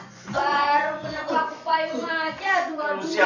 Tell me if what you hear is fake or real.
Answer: fake